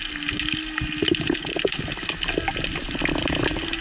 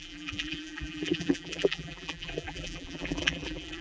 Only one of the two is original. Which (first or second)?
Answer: first